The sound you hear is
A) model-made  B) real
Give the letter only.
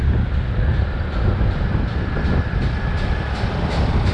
B